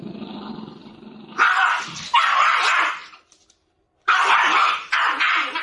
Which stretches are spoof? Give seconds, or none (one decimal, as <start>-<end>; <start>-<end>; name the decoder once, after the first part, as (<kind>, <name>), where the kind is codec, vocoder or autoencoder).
0.8-1.8 (vocoder, BigVGAN v2); 3.0-5.1